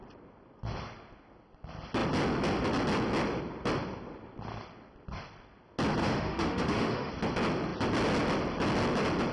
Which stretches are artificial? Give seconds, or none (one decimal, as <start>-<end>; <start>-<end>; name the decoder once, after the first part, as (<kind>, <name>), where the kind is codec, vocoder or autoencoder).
6.0-7.1 (autoencoder, DAC-VAE)